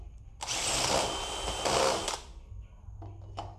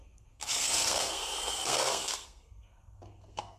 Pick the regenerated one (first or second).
second